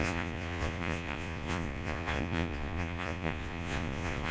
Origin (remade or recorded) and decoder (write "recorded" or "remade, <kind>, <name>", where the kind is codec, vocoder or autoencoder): remade, vocoder, Vocos